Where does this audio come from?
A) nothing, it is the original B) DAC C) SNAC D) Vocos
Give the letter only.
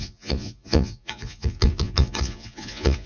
D